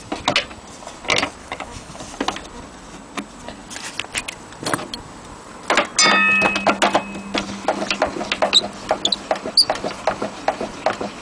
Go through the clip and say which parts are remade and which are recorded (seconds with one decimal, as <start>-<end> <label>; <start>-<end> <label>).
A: 0.0-1.4 recorded; 1.4-2.0 remade; 2.0-11.2 recorded